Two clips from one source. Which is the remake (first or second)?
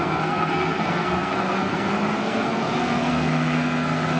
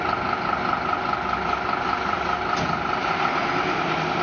first